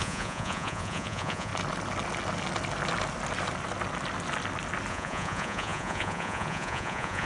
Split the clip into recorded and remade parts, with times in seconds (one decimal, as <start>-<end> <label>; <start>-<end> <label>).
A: 0.0-1.5 remade; 1.5-4.9 recorded; 4.9-7.2 remade